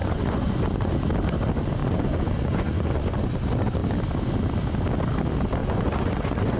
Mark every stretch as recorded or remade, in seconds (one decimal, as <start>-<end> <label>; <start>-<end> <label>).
0.0-0.9 remade; 0.9-1.8 recorded; 1.8-3.3 remade; 3.3-5.6 recorded; 5.6-6.6 remade